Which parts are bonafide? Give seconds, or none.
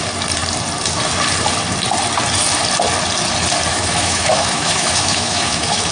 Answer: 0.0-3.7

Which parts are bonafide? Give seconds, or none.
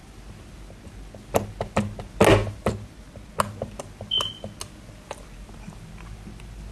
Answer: 0.0-6.7